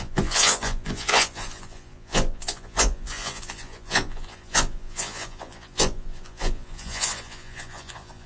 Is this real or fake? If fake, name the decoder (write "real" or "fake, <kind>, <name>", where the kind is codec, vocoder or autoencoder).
fake, vocoder, Vocos